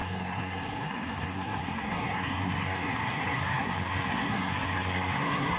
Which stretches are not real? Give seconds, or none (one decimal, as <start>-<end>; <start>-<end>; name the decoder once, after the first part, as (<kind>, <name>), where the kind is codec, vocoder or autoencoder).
0.0-5.6 (codec, SNAC)